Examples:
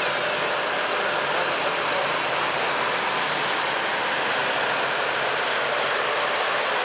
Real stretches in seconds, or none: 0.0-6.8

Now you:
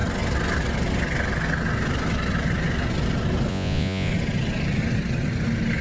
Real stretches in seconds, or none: 0.0-3.5; 4.1-5.8

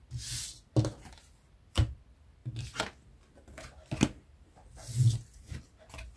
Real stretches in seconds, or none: 0.0-6.2

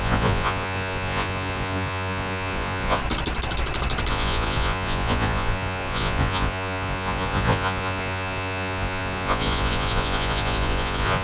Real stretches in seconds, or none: 3.0-4.1

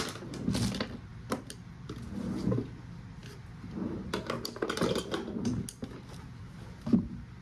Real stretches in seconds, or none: 0.0-7.4

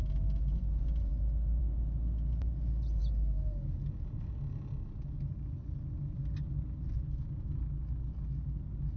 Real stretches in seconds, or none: 0.0-9.0